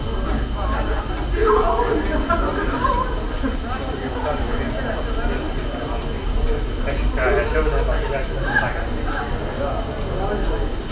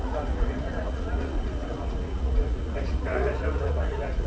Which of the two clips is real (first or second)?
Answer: first